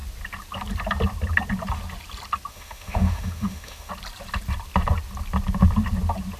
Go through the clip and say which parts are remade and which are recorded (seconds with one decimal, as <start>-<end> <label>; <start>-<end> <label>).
0.0-2.5 recorded; 2.5-3.9 remade; 3.9-6.4 recorded